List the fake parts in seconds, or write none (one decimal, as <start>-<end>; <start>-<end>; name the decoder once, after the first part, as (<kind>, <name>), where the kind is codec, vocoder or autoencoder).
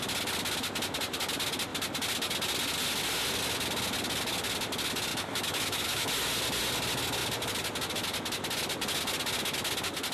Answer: 5.1-6.1 (autoencoder, DAC-VAE)